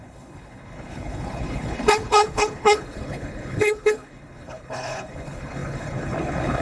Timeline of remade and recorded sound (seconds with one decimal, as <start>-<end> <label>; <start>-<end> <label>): 0.0-6.6 remade